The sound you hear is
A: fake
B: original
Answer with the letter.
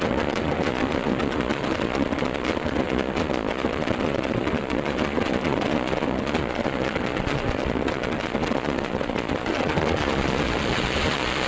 A